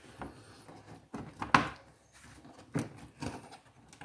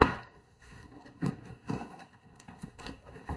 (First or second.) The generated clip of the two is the second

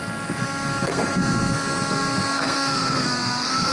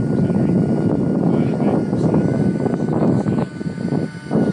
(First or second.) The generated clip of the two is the first